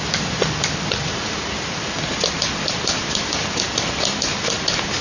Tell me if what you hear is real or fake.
real